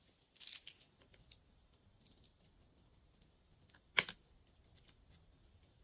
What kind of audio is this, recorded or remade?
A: recorded